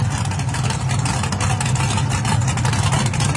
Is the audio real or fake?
real